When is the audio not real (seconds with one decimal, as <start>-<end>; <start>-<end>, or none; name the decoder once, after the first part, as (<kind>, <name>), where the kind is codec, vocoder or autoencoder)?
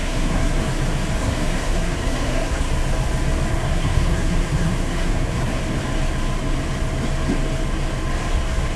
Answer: 0.0-0.6 (codec, SNAC); 1.2-2.7; 3.5-5.6